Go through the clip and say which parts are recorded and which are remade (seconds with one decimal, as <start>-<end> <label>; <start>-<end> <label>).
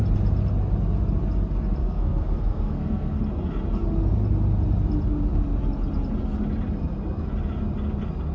0.0-1.8 recorded; 1.8-3.2 remade; 3.2-8.3 recorded